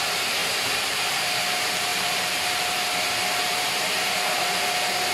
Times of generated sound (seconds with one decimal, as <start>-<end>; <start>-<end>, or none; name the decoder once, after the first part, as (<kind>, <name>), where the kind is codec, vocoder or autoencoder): 0.0-5.1 (vocoder, BigVGAN v2)